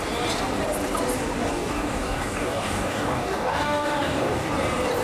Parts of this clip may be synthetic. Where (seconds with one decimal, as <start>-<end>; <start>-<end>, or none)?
1.5-4.5

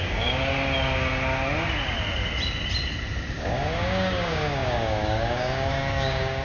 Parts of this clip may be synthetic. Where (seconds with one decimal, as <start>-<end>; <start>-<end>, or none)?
0.0-0.5; 3.4-6.4

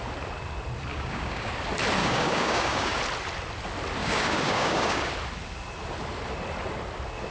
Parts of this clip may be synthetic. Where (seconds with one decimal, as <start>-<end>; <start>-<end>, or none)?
0.9-1.5; 2.0-3.0; 4.0-5.1

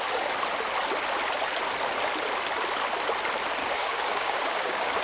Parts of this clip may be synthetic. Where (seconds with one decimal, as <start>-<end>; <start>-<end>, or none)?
3.6-5.0

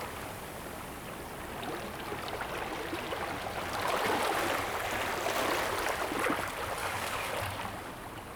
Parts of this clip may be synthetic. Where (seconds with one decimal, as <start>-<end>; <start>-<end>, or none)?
6.8-7.3

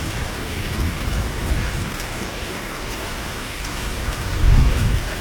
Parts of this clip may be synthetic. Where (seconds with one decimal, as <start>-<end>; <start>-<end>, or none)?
0.0-5.2